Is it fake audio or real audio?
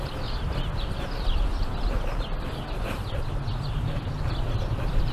real